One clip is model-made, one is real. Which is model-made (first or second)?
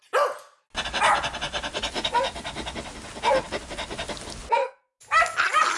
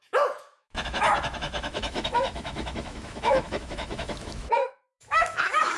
second